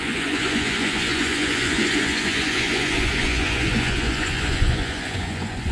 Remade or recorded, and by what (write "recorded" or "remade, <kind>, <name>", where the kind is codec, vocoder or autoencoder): remade, vocoder, Vocos